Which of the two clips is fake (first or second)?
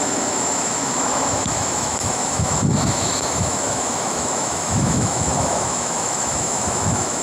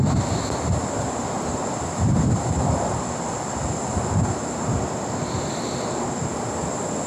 first